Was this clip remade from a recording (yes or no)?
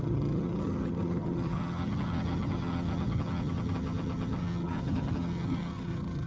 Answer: yes